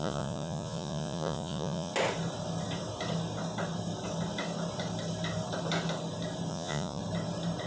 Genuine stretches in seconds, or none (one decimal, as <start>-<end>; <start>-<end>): 1.9-6.5; 7.0-7.7